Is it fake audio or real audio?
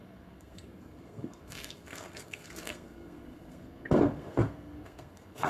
fake